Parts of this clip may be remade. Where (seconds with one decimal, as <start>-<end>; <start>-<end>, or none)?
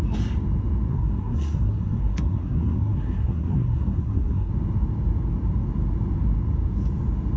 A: 0.9-4.5